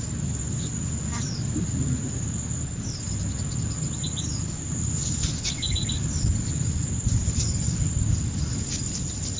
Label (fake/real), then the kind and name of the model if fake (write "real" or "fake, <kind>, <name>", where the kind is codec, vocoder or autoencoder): real